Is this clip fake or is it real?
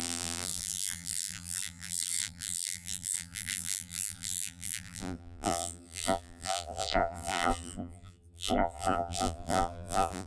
fake